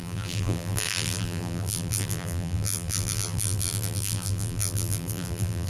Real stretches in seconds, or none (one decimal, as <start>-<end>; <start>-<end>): none